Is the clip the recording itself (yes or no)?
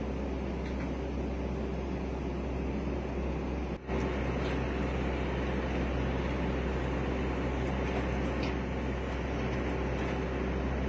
yes